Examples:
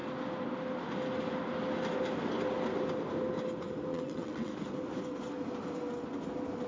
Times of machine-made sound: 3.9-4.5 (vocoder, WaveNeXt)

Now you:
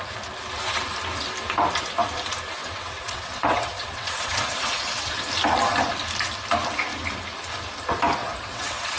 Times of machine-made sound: 2.6-5.1 (vocoder, WaveNeXt); 8.2-9.0

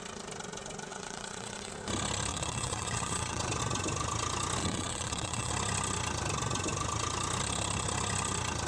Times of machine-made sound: 0.9-1.7 (vocoder, WaveNeXt); 2.3-3.6; 4.6-5.5

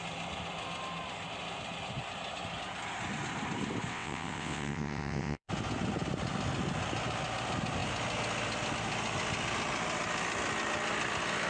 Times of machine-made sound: 3.9-5.5 (vocoder, WaveNeXt)

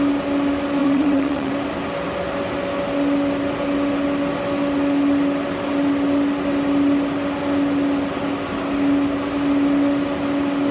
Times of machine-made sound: 0.8-1.5 (vocoder, WaveNeXt)

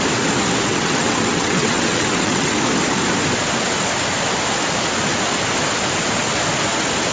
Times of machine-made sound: 0.7-2.5 (vocoder, WaveNeXt)

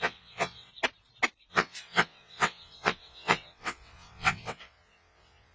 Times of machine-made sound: 0.0-0.7 (vocoder, WaveNeXt); 1.5-5.5

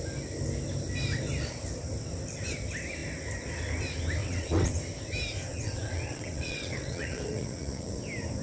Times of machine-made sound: 4.2-4.7 (vocoder, WaveNeXt); 5.5-8.0